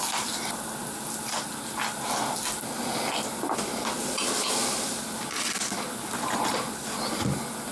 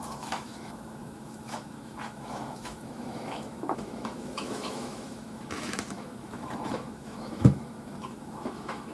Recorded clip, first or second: first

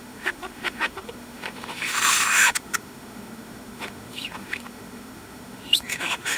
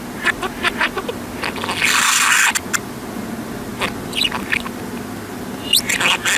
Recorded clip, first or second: second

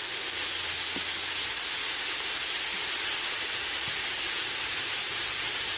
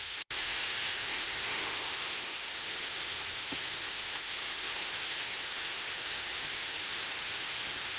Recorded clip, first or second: first